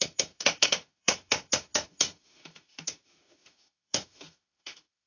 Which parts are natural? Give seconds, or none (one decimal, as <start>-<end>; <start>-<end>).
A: none